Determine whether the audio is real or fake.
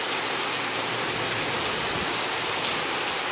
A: real